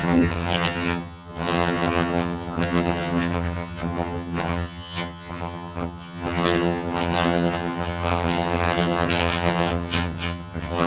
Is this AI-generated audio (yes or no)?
yes